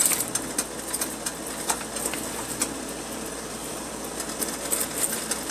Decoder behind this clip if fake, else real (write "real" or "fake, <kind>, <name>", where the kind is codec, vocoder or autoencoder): real